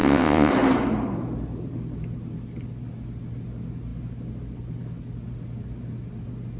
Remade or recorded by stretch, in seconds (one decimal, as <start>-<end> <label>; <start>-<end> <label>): 0.0-0.5 remade; 0.5-6.6 recorded

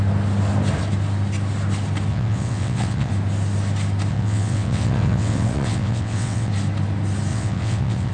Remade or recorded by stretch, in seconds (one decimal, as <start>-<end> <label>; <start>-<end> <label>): 0.0-2.1 recorded; 2.1-3.1 remade; 3.1-4.1 recorded; 4.1-6.5 remade; 6.5-7.3 recorded; 7.3-8.1 remade

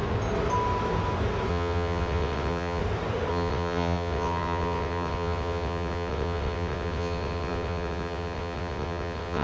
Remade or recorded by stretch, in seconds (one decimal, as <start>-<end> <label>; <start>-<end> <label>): 0.0-1.5 recorded; 1.5-2.8 remade; 2.8-3.3 recorded; 3.3-9.4 remade